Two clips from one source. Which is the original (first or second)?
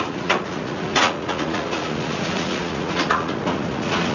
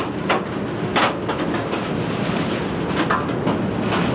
second